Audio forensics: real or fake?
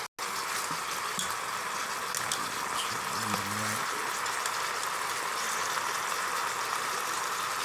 real